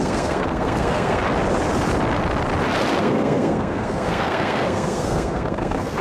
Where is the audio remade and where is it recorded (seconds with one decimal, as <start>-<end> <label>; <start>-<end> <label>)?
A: 0.0-1.2 remade; 1.2-3.0 recorded; 3.0-6.0 remade